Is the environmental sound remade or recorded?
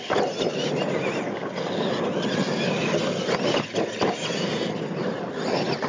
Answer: recorded